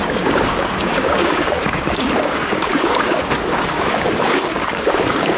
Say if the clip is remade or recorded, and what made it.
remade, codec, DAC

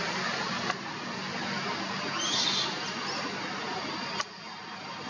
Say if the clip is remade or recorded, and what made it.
recorded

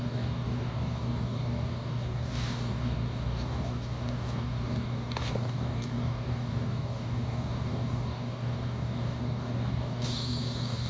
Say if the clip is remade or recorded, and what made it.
remade, codec, DAC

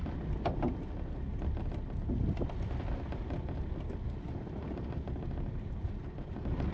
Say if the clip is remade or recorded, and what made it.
recorded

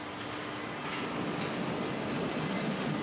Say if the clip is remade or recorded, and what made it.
recorded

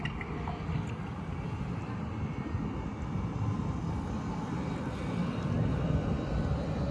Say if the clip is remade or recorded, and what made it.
recorded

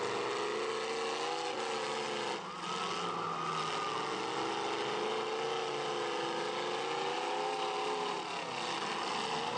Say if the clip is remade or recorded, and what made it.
recorded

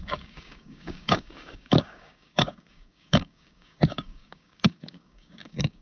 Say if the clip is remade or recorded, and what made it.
remade, codec, DAC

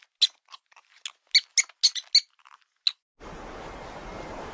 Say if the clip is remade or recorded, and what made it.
recorded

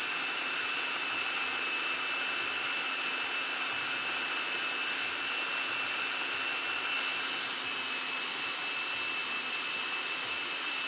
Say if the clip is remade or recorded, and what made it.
recorded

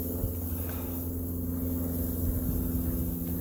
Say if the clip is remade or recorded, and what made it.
recorded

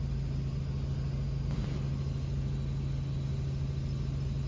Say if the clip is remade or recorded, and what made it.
recorded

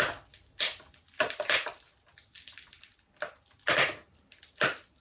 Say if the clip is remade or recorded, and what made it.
recorded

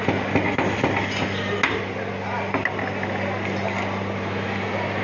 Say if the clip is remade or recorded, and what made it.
recorded